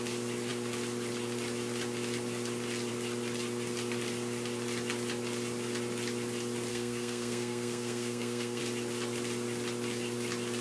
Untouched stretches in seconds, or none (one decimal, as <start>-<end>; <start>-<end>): 0.0-6.7; 8.6-10.6

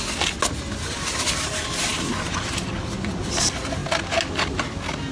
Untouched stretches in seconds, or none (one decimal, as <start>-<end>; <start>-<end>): 0.0-5.1

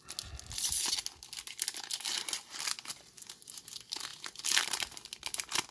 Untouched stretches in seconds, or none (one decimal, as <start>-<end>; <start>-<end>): 0.0-5.7

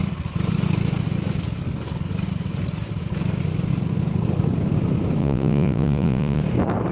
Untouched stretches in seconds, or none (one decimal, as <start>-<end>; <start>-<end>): 0.0-5.2; 6.4-6.9

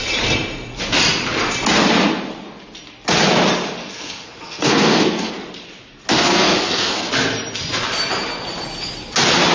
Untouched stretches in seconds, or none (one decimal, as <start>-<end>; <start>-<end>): 0.0-3.8; 5.3-6.1; 7.1-9.5

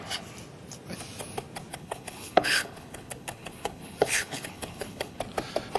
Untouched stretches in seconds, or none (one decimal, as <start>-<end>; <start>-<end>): 0.0-1.7; 5.2-5.8

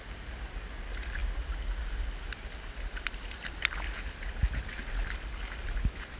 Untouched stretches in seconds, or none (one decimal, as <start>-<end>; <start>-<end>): 0.0-6.2